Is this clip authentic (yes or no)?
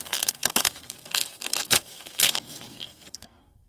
no